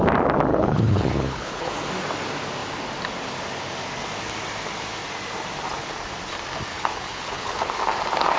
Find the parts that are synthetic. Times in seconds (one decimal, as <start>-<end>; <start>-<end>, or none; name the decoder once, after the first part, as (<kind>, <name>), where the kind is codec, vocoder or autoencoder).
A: 0.5-1.7 (codec, HILCodec); 6.7-7.7